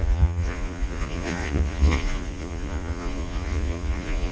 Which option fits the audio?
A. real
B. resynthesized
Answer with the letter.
B